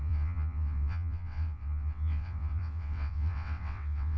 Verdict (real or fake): fake